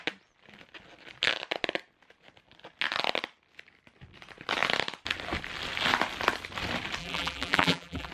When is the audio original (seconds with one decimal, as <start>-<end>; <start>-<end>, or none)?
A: 0.0-7.0